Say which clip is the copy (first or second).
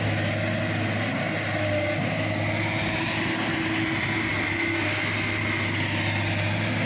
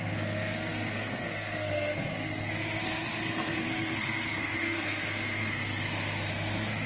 second